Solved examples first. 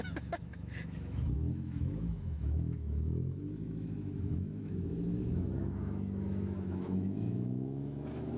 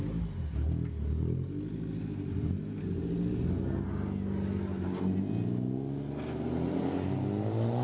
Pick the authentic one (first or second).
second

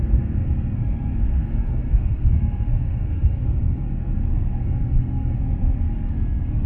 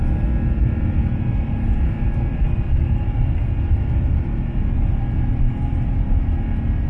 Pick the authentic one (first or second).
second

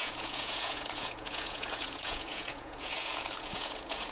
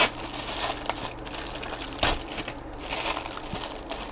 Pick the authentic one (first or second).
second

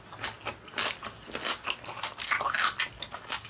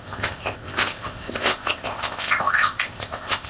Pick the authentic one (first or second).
first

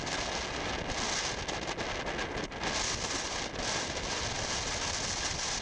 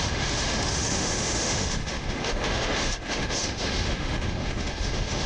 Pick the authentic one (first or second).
first